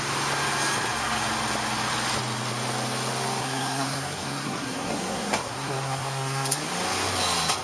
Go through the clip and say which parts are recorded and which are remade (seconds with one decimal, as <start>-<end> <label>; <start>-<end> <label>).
0.0-3.4 recorded; 3.4-6.7 remade; 6.7-7.6 recorded